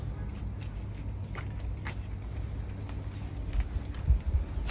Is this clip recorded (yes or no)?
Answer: yes